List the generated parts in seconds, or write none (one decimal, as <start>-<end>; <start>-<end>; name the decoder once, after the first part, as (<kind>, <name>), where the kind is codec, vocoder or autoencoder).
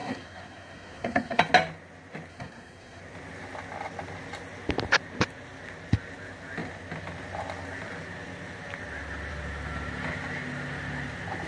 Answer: 0.0-1.4 (codec, SNAC); 2.3-3.0